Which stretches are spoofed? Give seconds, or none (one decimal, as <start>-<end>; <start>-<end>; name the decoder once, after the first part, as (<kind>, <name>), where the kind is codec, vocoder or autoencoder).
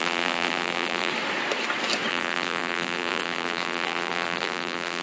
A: 0.0-1.1 (vocoder, BigVGAN v2); 2.1-5.0